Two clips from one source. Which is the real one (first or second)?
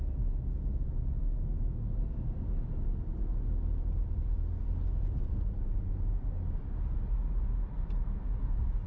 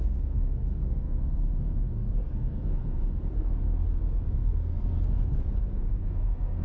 first